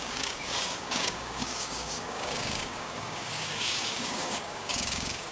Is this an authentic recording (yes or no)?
no